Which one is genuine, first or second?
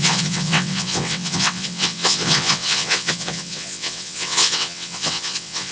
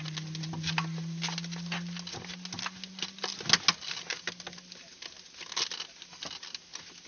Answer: second